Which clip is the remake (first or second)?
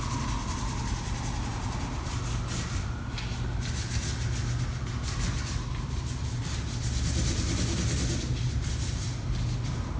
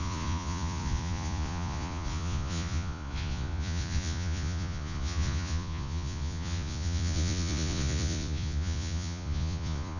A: second